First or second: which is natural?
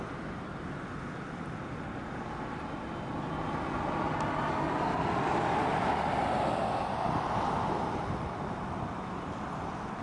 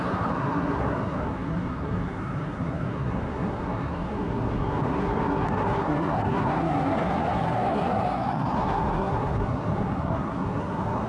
first